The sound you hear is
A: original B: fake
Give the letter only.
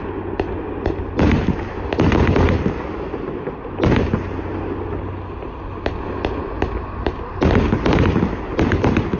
A